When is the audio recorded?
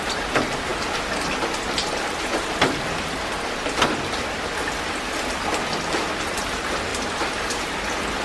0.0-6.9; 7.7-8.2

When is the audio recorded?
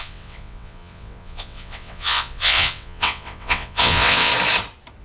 4.3-5.0